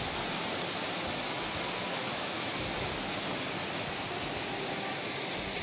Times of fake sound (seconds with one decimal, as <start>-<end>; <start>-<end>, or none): 2.0-2.6